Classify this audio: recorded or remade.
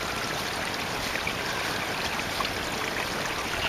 recorded